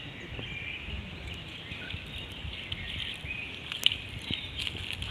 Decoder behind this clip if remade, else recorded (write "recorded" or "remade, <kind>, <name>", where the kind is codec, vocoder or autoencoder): recorded